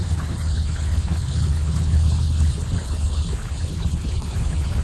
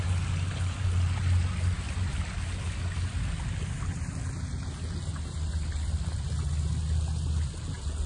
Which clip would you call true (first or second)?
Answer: second